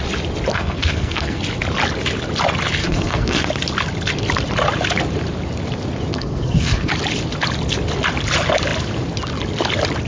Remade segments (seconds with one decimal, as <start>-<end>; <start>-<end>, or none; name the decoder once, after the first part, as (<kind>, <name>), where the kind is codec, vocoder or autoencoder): 0.5-1.4 (codec, SNAC); 2.8-3.4; 6.1-6.9